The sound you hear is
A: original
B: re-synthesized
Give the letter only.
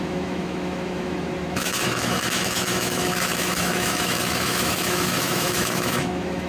B